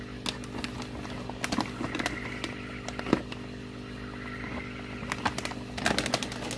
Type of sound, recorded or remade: recorded